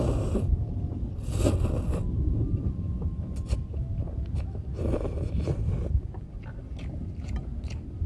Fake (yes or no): no